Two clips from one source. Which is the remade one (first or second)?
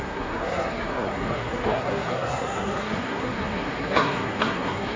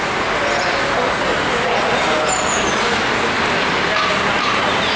first